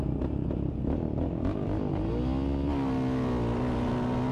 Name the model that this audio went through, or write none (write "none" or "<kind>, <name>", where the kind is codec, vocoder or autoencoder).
none